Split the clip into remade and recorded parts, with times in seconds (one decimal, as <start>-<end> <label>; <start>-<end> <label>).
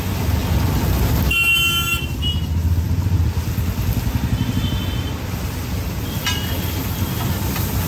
0.0-7.9 recorded